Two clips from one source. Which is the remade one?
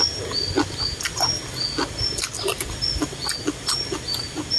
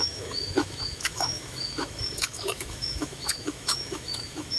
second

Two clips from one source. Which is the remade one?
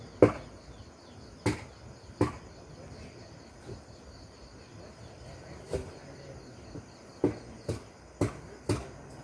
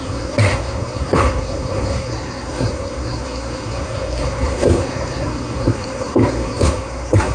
second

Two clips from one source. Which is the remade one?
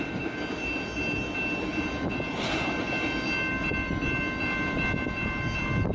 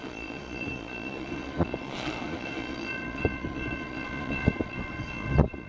second